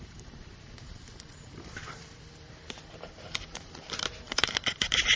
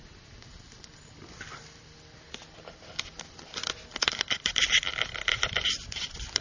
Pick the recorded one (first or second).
second